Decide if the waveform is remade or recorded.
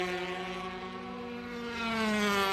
recorded